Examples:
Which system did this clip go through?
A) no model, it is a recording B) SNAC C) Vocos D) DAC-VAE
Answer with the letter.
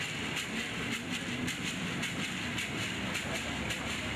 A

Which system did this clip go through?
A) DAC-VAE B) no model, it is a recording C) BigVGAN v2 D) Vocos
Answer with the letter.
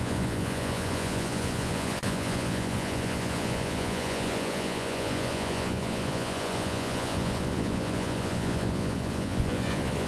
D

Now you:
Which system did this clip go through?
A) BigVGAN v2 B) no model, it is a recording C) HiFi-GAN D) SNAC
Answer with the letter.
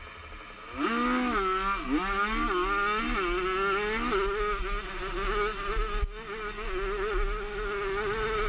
B